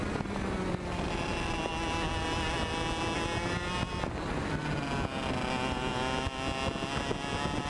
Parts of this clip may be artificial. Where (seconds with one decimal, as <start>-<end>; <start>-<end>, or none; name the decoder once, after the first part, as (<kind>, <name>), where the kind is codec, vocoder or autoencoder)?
none